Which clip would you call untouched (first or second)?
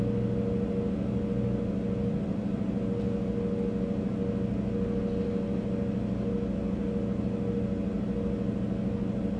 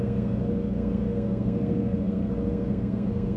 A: first